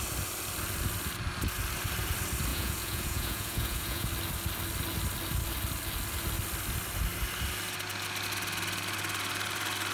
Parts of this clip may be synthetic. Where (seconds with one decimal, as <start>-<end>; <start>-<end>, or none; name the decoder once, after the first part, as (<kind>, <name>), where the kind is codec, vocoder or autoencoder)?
2.5-4.1 (vocoder, Vocos)